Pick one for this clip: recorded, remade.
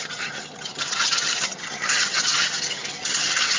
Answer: remade